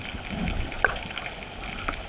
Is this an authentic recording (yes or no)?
yes